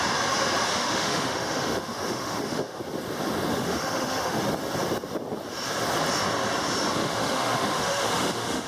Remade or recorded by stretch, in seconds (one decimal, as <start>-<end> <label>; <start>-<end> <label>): 0.0-0.7 recorded; 0.7-2.8 remade; 2.8-3.5 recorded; 3.5-4.4 remade; 4.4-7.0 recorded; 7.0-8.7 remade